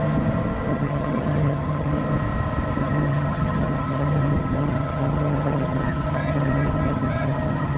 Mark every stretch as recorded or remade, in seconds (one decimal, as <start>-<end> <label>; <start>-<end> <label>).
0.0-0.7 recorded; 0.7-1.9 remade; 1.9-2.8 recorded; 2.8-7.8 remade